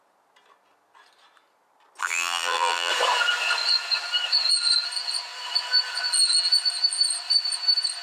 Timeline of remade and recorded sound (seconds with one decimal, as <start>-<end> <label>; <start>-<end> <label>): 0.0-2.0 recorded; 2.0-2.9 remade; 2.9-8.0 recorded